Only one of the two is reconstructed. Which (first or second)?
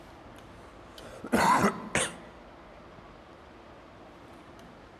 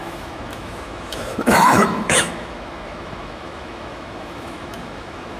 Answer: second